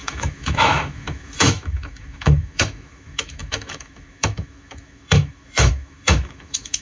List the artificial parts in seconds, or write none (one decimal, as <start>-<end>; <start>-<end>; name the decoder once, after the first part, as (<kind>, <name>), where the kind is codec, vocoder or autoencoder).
0.0-6.8 (autoencoder, DAC-VAE)